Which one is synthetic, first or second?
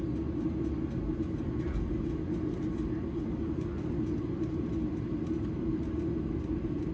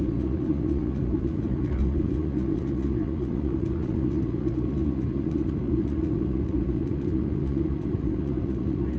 second